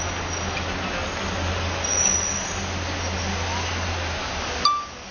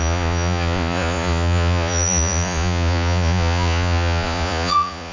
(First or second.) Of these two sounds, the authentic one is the first